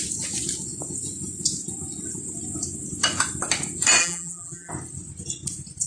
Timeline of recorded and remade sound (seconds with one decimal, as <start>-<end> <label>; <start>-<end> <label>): 0.0-4.0 recorded; 4.0-4.7 remade; 4.7-5.9 recorded